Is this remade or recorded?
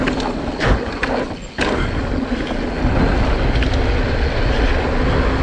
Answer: recorded